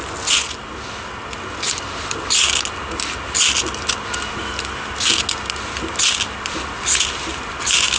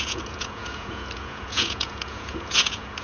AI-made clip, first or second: second